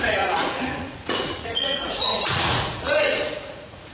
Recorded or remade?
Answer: remade